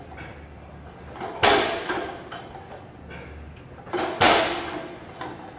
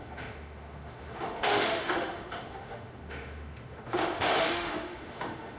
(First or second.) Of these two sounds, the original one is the first